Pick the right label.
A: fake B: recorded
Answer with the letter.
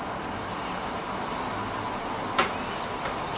B